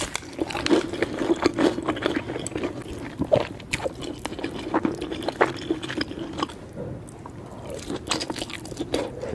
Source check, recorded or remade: recorded